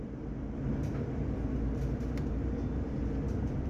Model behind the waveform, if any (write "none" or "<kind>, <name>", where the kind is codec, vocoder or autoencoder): none